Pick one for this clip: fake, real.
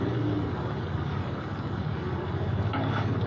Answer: fake